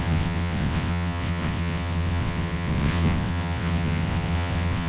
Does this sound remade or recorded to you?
remade